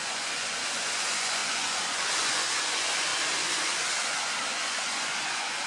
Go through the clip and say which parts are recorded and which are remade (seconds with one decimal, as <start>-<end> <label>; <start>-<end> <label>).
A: 0.0-5.7 remade